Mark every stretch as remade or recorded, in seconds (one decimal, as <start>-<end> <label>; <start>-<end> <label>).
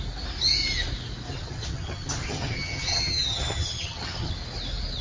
0.0-1.3 recorded; 1.3-4.3 remade; 4.3-5.0 recorded